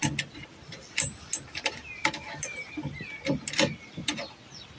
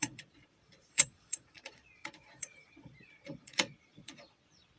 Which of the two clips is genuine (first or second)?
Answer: first